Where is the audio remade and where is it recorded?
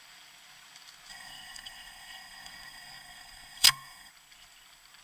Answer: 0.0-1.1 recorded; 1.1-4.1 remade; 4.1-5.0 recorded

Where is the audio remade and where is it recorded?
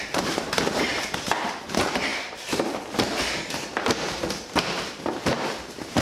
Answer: 0.0-6.0 remade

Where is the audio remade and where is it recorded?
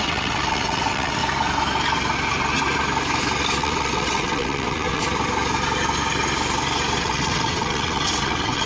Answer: 0.0-1.2 remade; 1.2-3.6 recorded; 3.6-5.0 remade; 5.0-7.0 recorded; 7.0-8.7 remade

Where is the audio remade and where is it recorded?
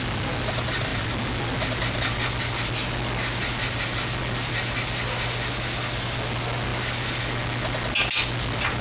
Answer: 0.0-8.8 recorded